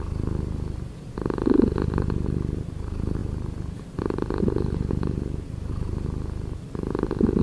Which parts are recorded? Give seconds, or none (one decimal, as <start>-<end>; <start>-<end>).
0.0-3.2; 3.9-7.4